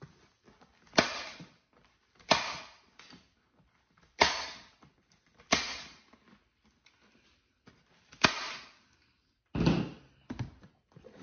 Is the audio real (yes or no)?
yes